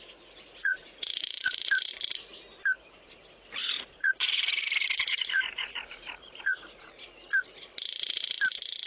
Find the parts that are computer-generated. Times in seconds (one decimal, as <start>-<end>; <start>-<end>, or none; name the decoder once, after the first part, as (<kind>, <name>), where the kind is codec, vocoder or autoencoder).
0.6-1.9 (vocoder, Vocos); 3.6-6.9